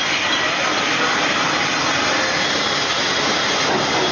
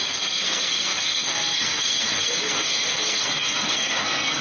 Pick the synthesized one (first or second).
second